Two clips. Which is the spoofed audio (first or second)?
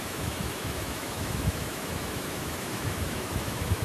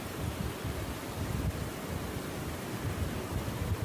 first